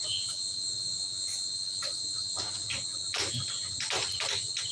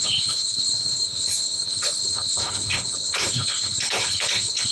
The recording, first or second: first